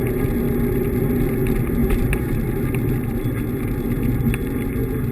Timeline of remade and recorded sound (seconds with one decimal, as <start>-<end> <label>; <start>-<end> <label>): 0.0-1.8 recorded; 1.8-2.4 remade; 2.4-5.1 recorded